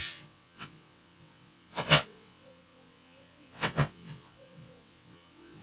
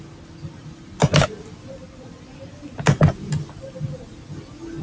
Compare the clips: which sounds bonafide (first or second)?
second